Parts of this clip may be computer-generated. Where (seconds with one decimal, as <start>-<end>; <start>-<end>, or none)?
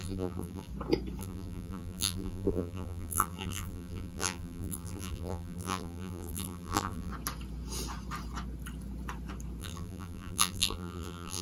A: 0.0-0.7; 1.2-7.1; 9.6-11.4